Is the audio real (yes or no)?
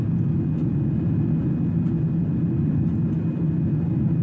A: yes